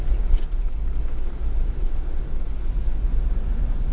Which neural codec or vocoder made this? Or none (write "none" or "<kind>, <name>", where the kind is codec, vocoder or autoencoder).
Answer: none